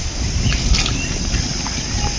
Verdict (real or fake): real